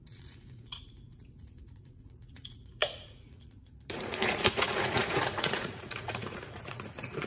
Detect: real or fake fake